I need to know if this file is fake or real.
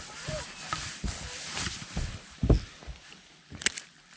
real